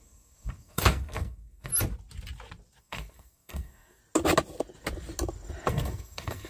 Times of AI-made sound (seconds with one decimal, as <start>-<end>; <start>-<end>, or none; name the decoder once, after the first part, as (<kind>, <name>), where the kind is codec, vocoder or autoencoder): 0.0-1.7 (codec, SNAC); 2.8-4.0; 5.7-6.5

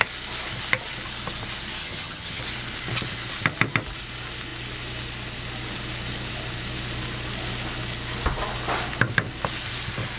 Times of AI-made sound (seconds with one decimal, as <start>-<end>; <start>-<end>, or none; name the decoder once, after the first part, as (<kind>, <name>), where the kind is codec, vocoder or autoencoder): 1.8-2.4 (vocoder, HiFi-GAN)

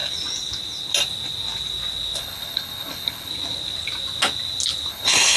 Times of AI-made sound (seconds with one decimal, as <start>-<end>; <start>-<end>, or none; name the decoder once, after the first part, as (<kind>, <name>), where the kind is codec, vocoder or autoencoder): 2.2-3.3 (codec, HILCodec); 4.9-5.4

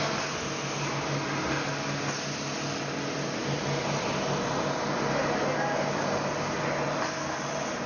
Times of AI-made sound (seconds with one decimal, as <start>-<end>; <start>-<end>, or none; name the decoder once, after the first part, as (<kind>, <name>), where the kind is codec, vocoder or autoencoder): none

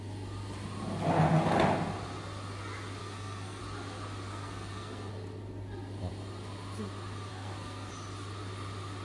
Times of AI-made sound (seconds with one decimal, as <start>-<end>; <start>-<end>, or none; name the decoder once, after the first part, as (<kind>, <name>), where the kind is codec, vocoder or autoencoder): 3.0-3.6 (codec, SNAC); 4.3-5.1; 7.3-7.9